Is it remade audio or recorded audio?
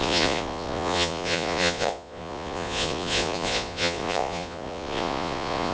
remade